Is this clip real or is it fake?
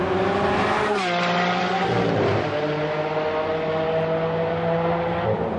real